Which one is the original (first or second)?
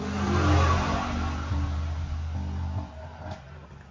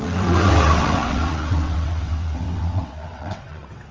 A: first